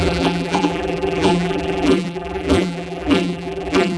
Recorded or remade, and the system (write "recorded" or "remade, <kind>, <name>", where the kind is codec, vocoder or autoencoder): remade, vocoder, BigVGAN v2